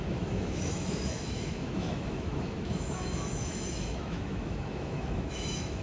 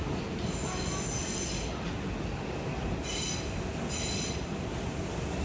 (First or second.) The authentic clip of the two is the second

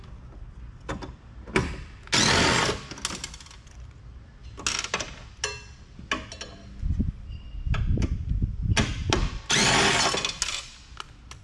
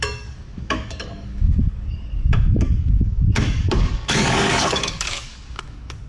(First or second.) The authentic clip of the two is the first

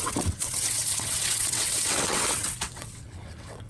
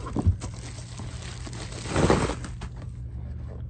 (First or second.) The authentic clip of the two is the second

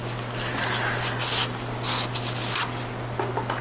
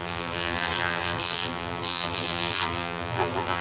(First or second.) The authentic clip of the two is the first